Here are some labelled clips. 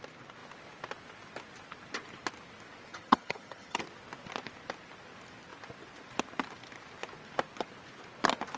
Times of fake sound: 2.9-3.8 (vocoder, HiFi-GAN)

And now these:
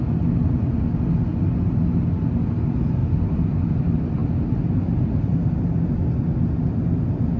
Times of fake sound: none

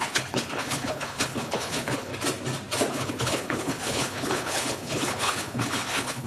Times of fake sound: 0.0-2.1 (codec, HILCodec); 2.9-6.3

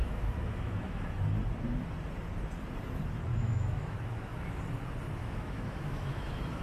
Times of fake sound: 0.0-1.1 (autoencoder, DAC-VAE); 3.3-4.6; 5.2-6.6

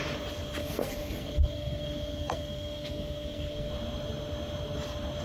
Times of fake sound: 0.6-3.7 (codec, SNAC)

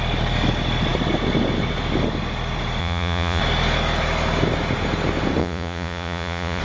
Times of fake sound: 2.8-3.4 (vocoder, Vocos); 5.4-6.6

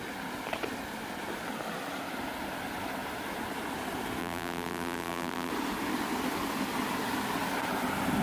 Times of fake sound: 4.2-5.5 (vocoder, BigVGAN v2)

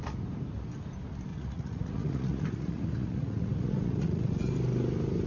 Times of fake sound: 1.3-4.5 (vocoder, Vocos)